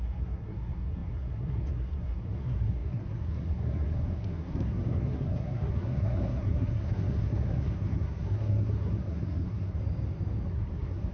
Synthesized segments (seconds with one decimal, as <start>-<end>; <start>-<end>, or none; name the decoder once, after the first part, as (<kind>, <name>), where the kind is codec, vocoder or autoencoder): 0.0-9.8 (codec, SNAC); 10.5-11.1